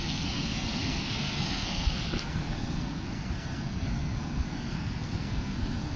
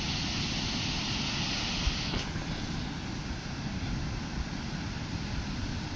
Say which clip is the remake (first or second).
first